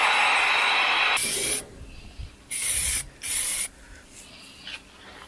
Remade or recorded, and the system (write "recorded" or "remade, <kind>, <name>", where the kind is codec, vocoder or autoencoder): recorded